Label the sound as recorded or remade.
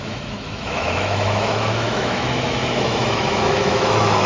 remade